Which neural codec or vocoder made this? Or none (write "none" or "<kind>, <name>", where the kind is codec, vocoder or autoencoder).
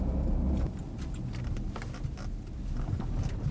none